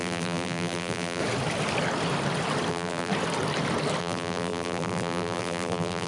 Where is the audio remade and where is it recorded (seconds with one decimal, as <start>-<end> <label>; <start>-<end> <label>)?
0.0-1.2 remade; 1.2-2.7 recorded; 2.7-3.1 remade; 3.1-4.0 recorded; 4.0-6.1 remade